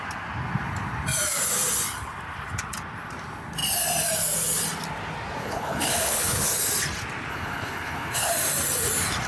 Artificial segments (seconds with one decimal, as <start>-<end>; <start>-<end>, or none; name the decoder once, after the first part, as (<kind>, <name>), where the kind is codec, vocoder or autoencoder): 5.4-6.5 (codec, HILCodec); 7.3-8.3